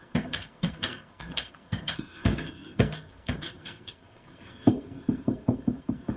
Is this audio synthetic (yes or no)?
yes